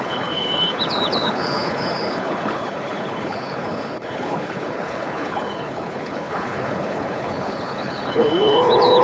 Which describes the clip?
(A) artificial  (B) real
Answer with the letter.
A